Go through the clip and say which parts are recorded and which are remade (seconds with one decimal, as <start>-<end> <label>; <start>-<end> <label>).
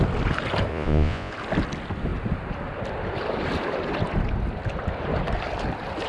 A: 0.0-0.7 recorded; 0.7-1.3 remade; 1.3-6.1 recorded